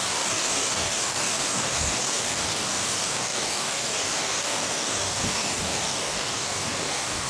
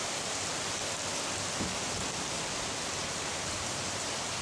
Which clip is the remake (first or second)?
first